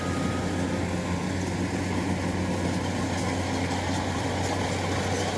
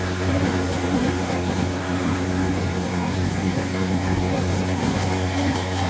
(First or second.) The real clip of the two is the first